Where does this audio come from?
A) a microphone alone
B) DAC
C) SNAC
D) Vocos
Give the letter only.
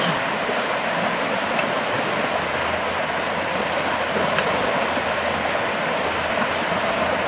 A